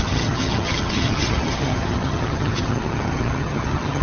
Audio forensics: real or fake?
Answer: fake